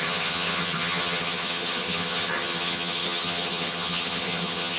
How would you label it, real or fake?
fake